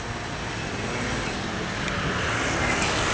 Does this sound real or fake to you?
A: real